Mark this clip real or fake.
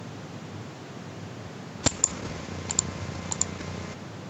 real